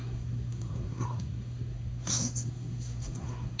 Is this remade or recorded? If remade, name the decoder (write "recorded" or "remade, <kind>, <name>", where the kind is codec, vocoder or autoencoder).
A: remade, codec, SNAC